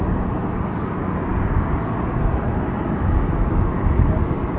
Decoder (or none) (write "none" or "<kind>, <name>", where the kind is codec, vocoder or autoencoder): none